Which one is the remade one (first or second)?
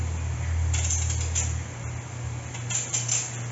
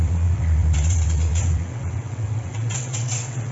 second